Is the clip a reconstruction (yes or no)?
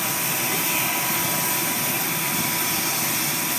no